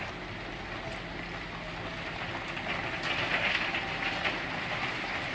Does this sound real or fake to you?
real